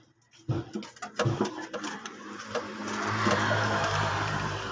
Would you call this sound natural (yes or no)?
no